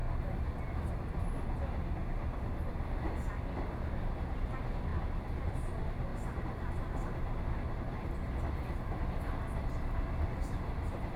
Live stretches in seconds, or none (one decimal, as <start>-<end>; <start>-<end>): 0.0-0.9; 2.0-2.5; 4.9-5.5; 6.1-10.7